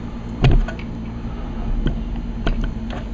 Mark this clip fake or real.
real